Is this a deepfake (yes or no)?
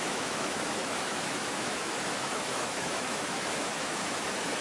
yes